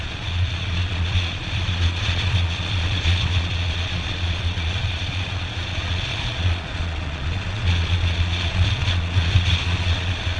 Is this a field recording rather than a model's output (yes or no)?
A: no